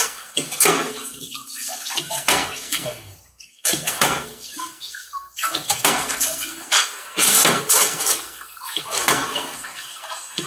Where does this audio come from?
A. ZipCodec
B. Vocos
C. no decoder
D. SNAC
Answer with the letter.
D